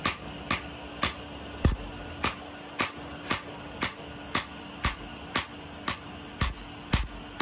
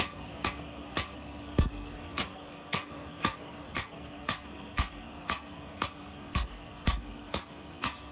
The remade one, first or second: second